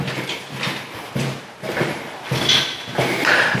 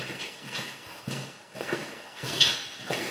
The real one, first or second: first